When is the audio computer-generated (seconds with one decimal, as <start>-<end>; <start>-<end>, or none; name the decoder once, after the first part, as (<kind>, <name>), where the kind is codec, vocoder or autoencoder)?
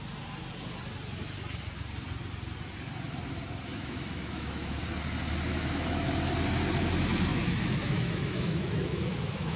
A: 3.7-4.8 (autoencoder, DAC-VAE); 5.5-6.1; 7.3-9.6